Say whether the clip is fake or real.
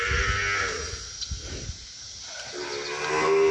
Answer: real